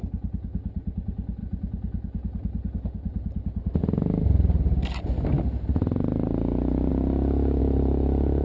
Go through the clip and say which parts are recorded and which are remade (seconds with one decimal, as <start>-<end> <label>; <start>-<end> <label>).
0.0-8.4 recorded